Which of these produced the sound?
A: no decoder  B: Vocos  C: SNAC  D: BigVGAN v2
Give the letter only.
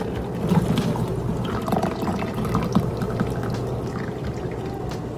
A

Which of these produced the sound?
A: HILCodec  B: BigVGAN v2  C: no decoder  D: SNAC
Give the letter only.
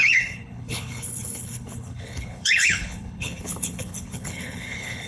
A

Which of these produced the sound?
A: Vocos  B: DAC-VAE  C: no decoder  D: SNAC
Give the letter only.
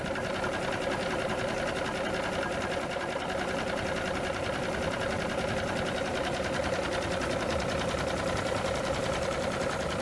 C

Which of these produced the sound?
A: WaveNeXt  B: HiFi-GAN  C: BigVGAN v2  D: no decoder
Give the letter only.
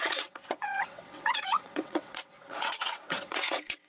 A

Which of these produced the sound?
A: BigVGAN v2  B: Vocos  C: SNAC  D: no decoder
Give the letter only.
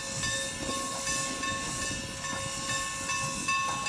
D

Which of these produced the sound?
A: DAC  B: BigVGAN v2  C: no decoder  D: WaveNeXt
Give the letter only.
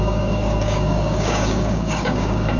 A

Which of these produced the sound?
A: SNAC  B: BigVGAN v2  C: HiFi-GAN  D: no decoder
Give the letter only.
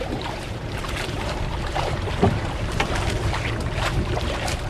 B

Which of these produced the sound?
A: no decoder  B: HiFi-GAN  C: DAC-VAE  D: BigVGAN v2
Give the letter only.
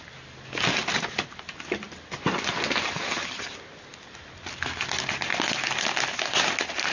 A